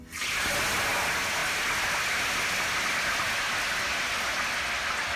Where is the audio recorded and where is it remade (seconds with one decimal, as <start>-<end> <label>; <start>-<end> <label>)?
0.0-5.2 recorded